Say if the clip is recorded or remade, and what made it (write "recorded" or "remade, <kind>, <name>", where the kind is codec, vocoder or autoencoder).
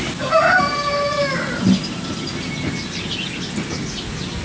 recorded